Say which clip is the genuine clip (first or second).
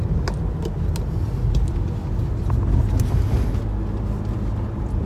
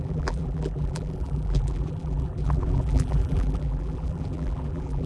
first